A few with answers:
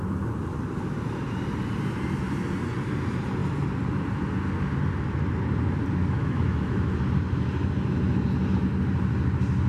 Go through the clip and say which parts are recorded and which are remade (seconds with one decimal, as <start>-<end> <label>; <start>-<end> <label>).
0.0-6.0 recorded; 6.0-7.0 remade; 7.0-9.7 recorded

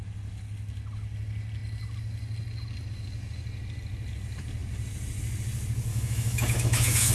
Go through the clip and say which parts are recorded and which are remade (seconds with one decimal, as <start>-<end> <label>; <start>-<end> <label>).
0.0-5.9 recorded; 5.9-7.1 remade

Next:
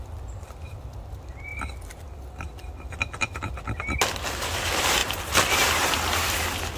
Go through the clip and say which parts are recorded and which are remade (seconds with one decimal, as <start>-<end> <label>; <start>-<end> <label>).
0.0-6.8 recorded